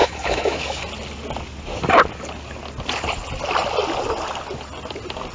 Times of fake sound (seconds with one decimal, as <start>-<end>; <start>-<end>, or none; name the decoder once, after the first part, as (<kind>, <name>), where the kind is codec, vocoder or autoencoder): 0.0-0.8 (autoencoder, DAC-VAE)